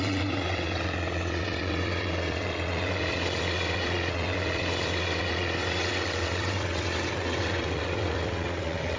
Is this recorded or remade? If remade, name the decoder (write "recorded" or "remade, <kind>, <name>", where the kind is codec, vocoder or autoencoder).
remade, vocoder, WaveNeXt